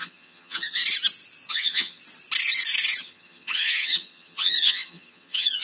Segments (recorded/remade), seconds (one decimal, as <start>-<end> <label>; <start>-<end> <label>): 0.0-0.8 remade; 0.8-1.5 recorded; 1.5-2.0 remade; 2.0-3.0 recorded; 3.0-5.6 remade